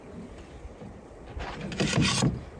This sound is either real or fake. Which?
real